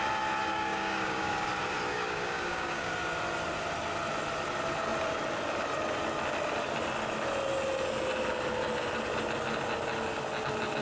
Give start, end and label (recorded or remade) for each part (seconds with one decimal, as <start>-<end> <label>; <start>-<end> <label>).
0.0-0.5 recorded; 0.5-1.5 remade; 1.5-1.9 recorded; 1.9-2.9 remade; 2.9-10.8 recorded